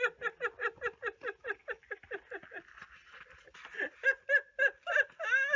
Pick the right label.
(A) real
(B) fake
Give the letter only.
A